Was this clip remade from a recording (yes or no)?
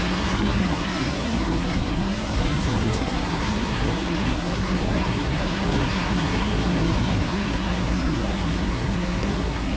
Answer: yes